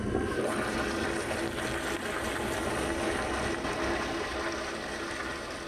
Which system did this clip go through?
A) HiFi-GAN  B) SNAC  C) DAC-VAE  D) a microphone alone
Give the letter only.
D